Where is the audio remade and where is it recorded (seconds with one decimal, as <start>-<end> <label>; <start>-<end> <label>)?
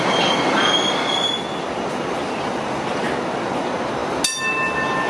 0.0-5.1 recorded